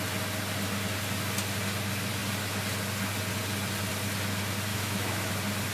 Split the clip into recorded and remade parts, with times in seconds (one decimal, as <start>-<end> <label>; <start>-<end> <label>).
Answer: 0.0-4.7 recorded; 4.7-5.3 remade; 5.3-5.7 recorded